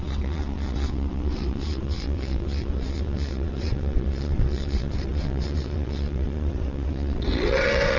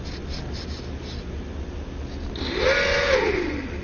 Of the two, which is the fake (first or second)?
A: first